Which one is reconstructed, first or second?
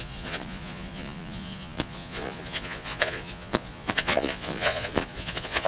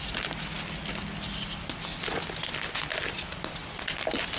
first